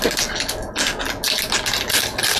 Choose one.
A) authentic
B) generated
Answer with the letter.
A